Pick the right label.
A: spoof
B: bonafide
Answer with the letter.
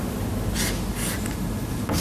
B